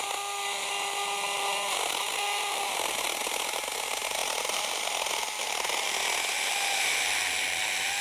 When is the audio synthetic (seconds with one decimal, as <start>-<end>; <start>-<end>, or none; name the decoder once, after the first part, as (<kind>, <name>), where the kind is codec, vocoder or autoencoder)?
none